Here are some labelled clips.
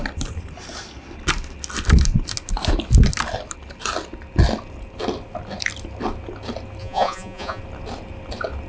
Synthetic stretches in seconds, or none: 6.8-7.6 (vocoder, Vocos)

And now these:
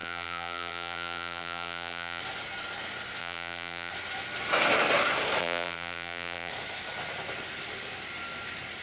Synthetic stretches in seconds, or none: 0.0-2.2 (vocoder, BigVGAN v2); 3.2-3.9; 5.4-6.5

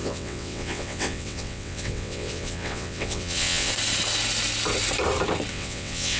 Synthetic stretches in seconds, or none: 0.0-3.7 (vocoder, WaveNeXt); 5.5-6.2

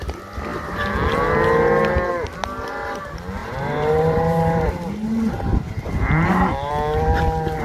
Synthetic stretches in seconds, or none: 3.4-6.7 (vocoder, BigVGAN v2)

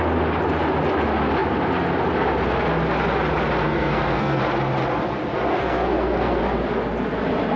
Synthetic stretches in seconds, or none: 3.6-4.4 (codec, SNAC); 5.5-6.4

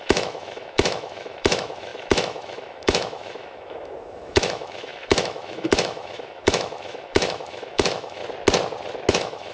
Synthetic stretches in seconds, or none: 0.0-8.2 (autoencoder, DAC-VAE); 9.1-9.5

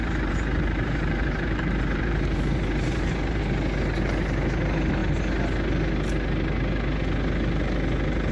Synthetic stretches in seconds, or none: 0.0-3.4 (vocoder, BigVGAN v2)